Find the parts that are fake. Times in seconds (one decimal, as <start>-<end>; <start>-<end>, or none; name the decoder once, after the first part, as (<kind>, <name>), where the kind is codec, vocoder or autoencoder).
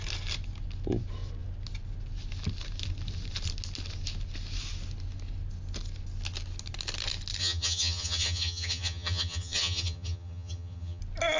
7.4-11.0 (vocoder, HiFi-GAN)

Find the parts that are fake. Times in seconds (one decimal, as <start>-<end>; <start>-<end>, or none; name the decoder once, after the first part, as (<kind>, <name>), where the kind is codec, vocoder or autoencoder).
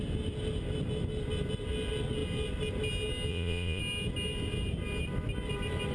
3.3-3.8 (vocoder, Vocos)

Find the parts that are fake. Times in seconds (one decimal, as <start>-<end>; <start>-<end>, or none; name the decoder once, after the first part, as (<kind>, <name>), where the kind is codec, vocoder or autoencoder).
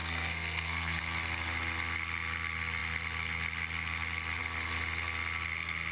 0.0-1.0 (codec, SNAC)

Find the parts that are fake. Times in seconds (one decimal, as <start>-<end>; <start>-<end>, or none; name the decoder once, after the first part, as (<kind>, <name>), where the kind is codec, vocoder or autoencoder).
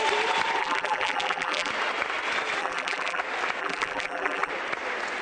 0.6-1.7 (vocoder, BigVGAN v2); 2.6-3.2; 3.6-4.5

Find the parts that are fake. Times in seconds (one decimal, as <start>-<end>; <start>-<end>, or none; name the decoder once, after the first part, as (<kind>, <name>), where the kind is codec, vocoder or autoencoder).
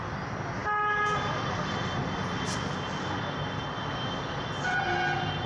none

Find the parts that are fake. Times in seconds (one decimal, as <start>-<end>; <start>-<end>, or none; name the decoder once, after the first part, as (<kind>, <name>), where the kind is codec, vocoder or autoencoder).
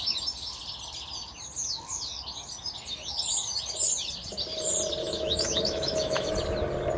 5.0-6.3 (autoencoder, DAC-VAE)